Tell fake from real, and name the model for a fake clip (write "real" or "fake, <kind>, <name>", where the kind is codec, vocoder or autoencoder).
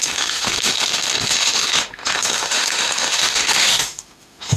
fake, autoencoder, DAC-VAE